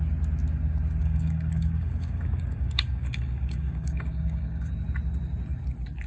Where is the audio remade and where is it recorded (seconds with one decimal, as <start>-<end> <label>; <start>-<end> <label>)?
0.0-1.0 recorded; 1.0-4.7 remade; 4.7-6.1 recorded